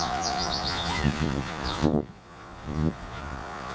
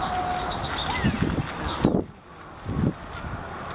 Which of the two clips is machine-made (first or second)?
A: first